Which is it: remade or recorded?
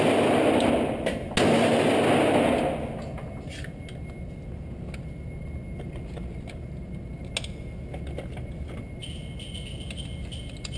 recorded